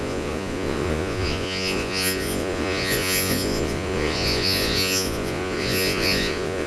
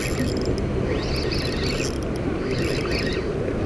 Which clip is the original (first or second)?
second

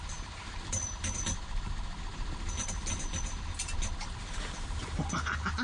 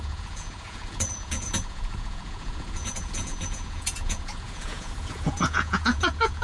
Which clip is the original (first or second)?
first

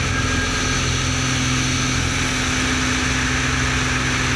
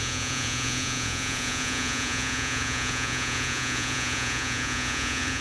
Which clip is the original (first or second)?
first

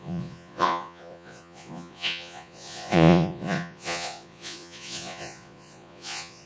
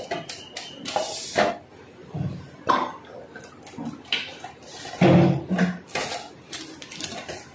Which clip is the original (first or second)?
second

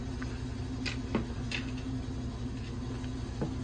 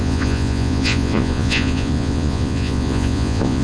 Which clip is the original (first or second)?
first